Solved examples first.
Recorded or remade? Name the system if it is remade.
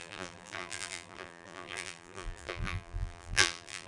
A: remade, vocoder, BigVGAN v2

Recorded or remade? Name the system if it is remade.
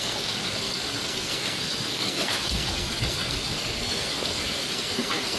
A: remade, codec, SNAC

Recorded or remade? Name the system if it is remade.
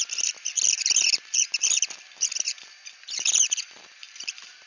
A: recorded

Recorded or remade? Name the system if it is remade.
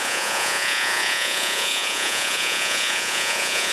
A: remade, vocoder, Vocos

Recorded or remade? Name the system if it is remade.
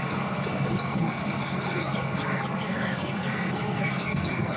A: remade, codec, SNAC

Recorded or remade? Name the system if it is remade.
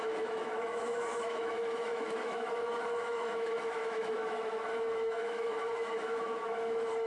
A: remade, autoencoder, DAC-VAE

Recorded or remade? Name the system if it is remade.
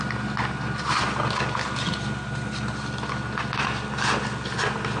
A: recorded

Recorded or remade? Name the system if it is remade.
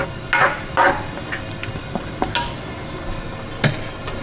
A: recorded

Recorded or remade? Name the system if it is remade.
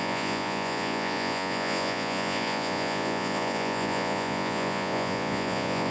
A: remade, vocoder, Vocos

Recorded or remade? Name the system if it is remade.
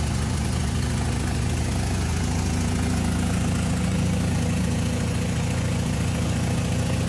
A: remade, vocoder, Vocos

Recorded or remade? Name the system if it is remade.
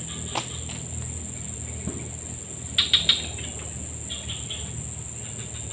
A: recorded